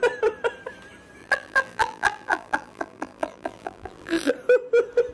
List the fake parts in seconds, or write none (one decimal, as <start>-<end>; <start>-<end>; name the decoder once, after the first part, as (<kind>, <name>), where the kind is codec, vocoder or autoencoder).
1.2-4.3 (vocoder, BigVGAN v2)